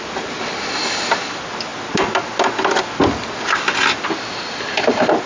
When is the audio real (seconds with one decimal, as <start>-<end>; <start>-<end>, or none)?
0.0-5.3